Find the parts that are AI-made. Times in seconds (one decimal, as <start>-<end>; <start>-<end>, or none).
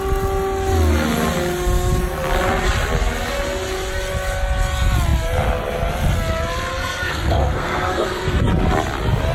6.7-8.4